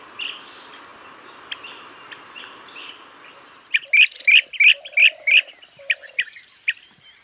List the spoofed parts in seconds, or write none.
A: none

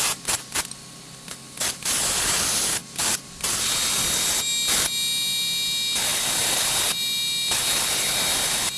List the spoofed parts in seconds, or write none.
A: none

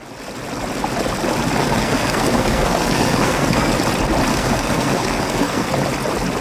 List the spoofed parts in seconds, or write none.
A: 1.6-3.8 (codec, SNAC); 4.3-5.7

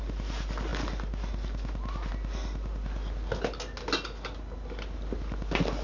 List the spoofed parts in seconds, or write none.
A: none

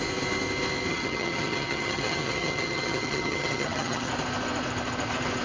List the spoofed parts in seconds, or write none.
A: 0.9-4.1 (vocoder, HiFi-GAN)

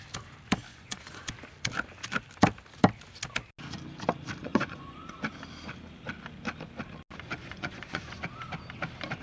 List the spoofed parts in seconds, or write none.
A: 0.7-1.3 (vocoder, Vocos); 4.4-5.1; 7.4-8.2